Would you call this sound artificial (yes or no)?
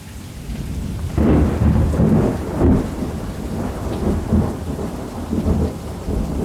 yes